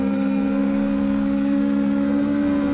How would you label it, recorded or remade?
remade